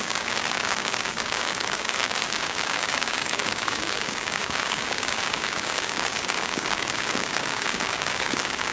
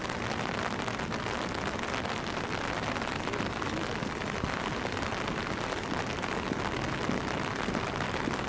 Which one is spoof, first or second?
first